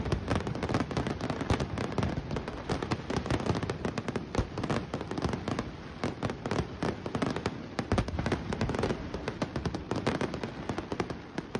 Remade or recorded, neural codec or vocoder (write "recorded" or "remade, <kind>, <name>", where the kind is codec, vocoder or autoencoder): recorded